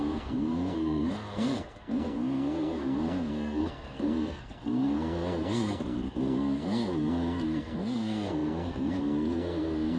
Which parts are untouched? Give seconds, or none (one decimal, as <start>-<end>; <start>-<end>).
none